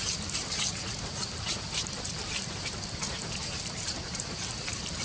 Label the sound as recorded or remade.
remade